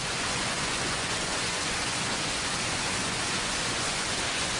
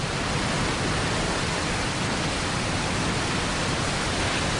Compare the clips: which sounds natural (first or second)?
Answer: second